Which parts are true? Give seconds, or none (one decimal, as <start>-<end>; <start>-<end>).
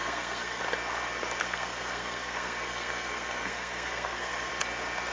0.6-1.4; 4.5-5.1